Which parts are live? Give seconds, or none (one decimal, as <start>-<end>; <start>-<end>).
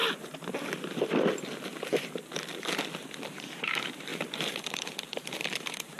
0.0-3.2